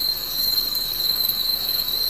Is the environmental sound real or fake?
fake